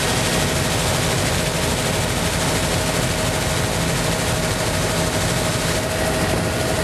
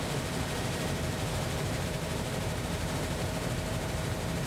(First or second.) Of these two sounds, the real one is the first